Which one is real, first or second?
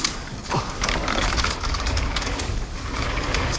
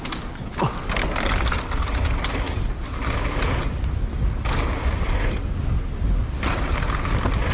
second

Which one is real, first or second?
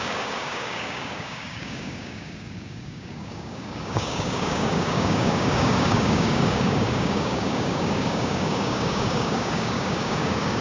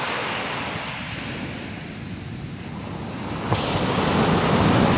second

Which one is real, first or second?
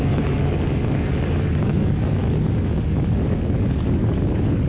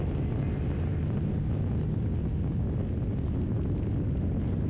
second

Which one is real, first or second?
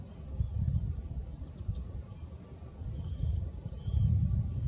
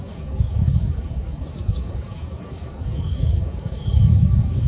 first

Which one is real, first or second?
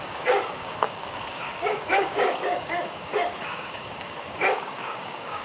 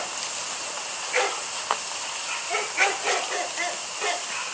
second